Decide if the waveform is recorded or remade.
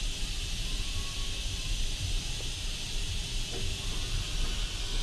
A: recorded